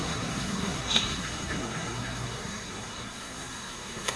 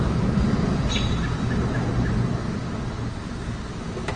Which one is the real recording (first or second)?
second